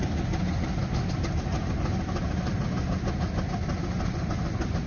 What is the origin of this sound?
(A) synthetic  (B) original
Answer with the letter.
B